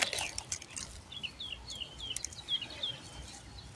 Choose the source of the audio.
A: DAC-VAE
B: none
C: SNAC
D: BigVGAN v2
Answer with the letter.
B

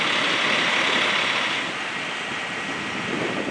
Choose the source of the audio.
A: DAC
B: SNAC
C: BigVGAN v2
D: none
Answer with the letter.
D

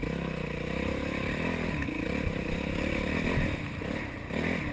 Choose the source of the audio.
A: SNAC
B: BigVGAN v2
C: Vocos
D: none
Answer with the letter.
D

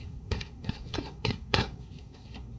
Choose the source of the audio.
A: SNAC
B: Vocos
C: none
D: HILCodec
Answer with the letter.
A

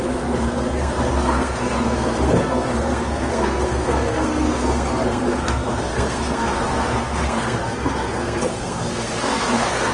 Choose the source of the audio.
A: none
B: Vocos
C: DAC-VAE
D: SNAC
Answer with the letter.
D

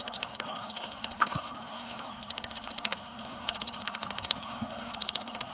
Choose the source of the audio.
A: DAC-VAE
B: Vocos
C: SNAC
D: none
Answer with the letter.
C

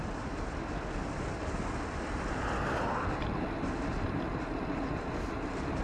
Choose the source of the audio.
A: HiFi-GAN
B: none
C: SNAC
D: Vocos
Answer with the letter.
B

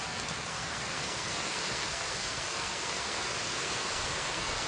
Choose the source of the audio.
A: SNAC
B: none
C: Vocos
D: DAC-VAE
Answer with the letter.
A